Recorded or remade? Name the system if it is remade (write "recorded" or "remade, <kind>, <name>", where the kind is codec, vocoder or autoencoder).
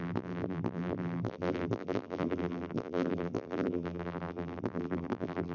remade, vocoder, BigVGAN v2